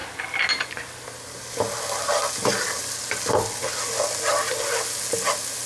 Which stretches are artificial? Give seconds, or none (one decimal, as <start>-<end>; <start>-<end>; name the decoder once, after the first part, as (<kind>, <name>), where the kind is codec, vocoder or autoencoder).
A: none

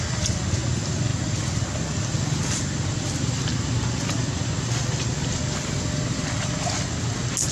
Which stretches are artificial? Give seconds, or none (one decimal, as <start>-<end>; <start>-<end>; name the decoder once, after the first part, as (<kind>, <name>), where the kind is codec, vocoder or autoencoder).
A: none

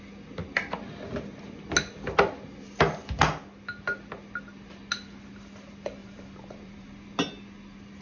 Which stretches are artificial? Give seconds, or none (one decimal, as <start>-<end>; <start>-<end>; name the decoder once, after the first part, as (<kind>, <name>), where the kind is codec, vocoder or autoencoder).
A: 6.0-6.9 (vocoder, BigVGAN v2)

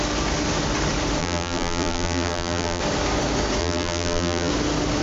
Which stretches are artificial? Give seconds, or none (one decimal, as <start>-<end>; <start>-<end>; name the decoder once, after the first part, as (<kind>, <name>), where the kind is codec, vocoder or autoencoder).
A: 1.2-2.8 (vocoder, BigVGAN v2); 3.6-4.5

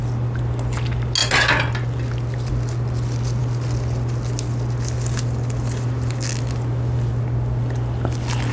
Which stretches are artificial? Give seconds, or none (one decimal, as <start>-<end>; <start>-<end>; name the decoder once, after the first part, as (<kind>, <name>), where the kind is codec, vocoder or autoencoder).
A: none

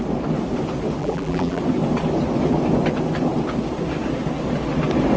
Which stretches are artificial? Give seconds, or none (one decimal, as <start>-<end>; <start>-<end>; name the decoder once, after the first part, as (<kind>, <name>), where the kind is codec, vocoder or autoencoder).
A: 1.0-1.6 (vocoder, BigVGAN v2)